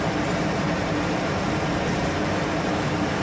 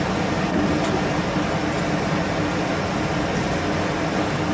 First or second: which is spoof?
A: first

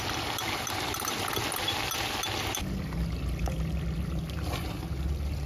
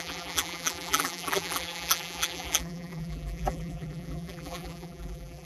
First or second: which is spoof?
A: second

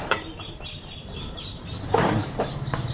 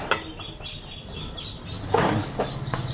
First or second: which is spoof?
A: first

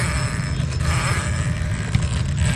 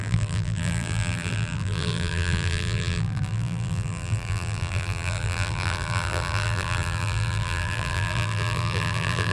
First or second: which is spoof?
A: second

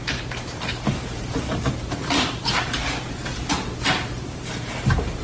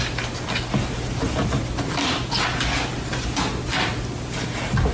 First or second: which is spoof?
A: first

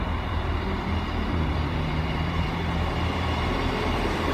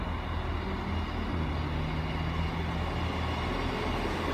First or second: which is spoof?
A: first